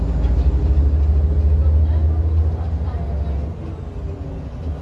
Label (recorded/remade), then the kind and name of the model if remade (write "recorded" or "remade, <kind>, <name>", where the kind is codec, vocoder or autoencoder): recorded